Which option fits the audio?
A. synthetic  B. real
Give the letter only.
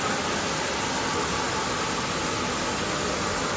B